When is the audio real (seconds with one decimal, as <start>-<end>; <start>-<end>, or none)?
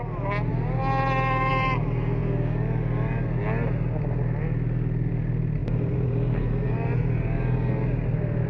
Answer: 0.0-8.5